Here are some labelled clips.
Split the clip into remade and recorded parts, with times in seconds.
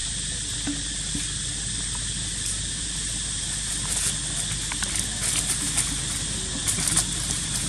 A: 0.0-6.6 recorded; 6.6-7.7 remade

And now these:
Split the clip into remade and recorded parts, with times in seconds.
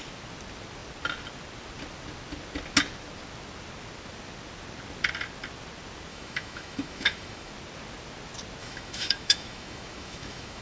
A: 0.0-6.1 recorded; 6.1-7.5 remade; 7.5-8.6 recorded; 8.6-10.6 remade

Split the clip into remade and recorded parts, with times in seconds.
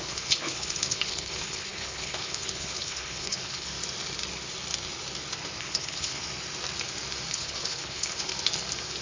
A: 0.0-3.7 remade; 3.7-5.6 recorded; 5.6-6.2 remade; 6.2-7.3 recorded; 7.3-8.3 remade; 8.3-9.0 recorded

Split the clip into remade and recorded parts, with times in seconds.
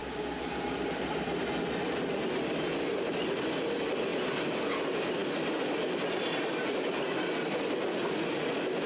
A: 0.0-2.0 remade; 2.0-4.1 recorded; 4.1-4.6 remade; 4.6-5.2 recorded; 5.2-8.4 remade; 8.4-8.9 recorded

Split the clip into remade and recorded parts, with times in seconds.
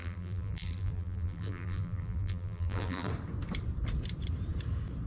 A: 0.0-3.1 remade; 3.1-5.1 recorded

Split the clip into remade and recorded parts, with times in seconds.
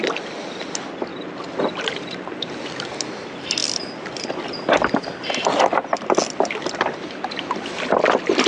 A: 0.0-1.1 recorded; 1.1-3.1 remade; 3.1-8.5 recorded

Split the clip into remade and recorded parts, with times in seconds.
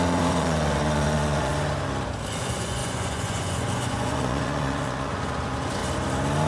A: 0.0-1.5 remade; 1.5-2.4 recorded; 2.4-5.8 remade; 5.8-6.5 recorded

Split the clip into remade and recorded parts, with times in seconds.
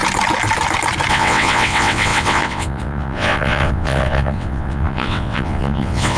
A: 0.0-1.1 recorded; 1.1-6.2 remade